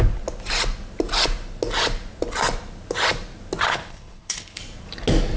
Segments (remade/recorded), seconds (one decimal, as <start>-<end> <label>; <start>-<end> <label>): 0.0-3.7 recorded; 3.7-4.6 remade; 4.6-5.4 recorded